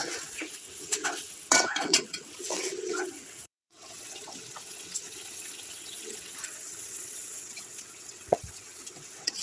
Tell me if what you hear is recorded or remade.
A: remade